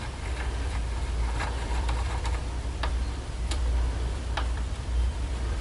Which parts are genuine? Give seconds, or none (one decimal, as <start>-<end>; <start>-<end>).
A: none